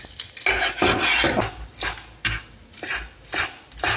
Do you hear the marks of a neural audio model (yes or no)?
no